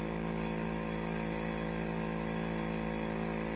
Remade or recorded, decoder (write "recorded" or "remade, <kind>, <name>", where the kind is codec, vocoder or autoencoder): recorded